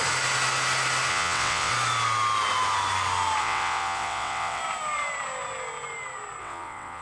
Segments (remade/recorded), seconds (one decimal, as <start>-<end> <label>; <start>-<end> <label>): 0.0-1.1 recorded; 1.1-1.7 remade; 1.7-3.4 recorded; 3.4-4.6 remade; 4.6-6.4 recorded; 6.4-7.0 remade